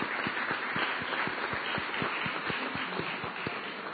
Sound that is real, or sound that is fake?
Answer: real